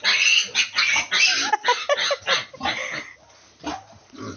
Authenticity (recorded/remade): recorded